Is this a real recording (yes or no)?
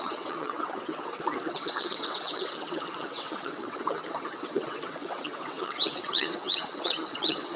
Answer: no